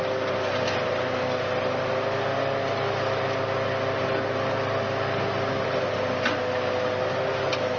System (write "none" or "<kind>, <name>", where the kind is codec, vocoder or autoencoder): none